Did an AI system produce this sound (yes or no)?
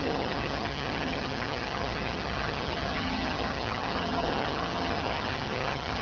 yes